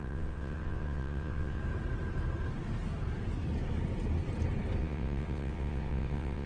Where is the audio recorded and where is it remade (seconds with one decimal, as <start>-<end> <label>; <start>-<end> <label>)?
0.0-1.6 remade; 1.6-4.8 recorded; 4.8-6.5 remade